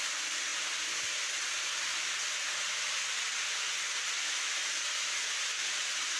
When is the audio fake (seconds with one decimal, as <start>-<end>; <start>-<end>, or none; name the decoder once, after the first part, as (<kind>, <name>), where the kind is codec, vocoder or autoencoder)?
none